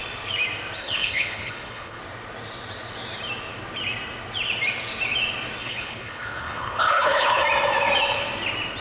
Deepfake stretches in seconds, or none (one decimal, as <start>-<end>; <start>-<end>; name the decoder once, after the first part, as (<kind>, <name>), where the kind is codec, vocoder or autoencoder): 0.8-2.0 (codec, HILCodec); 5.6-7.4